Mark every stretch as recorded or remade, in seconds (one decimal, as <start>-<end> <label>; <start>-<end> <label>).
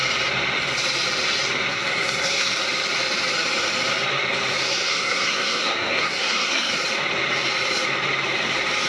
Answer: 0.0-1.7 recorded; 1.7-2.5 remade; 2.5-4.7 recorded; 4.7-6.7 remade; 6.7-8.9 recorded